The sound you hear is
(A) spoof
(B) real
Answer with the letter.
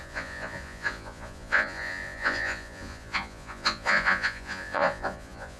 A